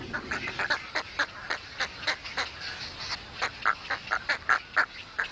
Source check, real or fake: real